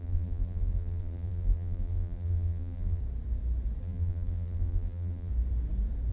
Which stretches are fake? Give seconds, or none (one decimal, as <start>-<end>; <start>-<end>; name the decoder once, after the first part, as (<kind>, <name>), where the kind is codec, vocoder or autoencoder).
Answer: 0.0-3.0 (vocoder, BigVGAN v2); 3.8-5.3